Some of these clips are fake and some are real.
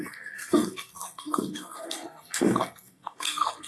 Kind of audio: fake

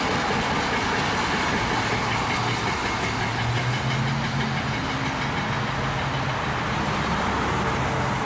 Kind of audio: real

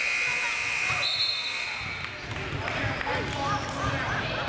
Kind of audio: real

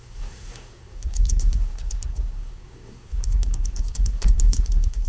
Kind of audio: fake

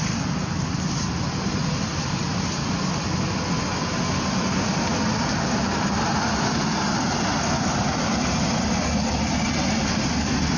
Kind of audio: real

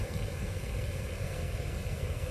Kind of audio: fake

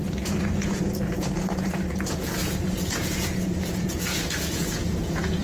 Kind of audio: fake